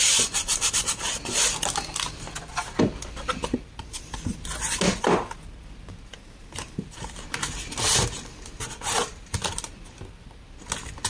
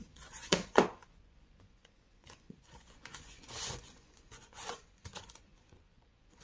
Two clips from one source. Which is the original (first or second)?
first